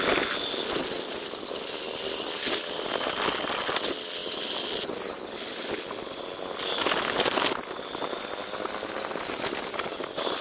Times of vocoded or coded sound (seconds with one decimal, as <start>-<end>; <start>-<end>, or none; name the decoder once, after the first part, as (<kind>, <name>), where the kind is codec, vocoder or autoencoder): none